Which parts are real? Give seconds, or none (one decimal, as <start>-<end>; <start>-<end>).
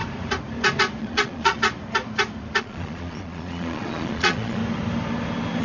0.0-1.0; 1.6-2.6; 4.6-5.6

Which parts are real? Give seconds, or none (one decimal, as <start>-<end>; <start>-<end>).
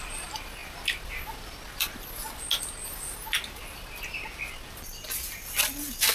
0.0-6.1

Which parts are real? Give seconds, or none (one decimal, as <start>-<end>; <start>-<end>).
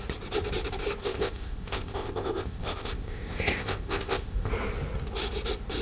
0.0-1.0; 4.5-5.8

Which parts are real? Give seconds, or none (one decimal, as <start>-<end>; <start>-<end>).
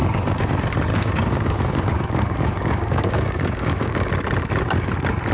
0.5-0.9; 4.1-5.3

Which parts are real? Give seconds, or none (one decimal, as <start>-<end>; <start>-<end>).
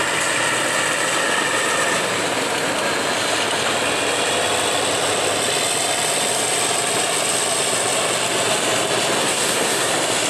0.0-9.2; 9.9-10.3